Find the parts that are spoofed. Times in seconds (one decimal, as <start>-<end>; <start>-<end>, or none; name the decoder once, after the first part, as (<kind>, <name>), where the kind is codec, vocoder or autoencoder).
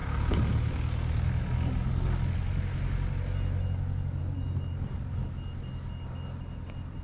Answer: none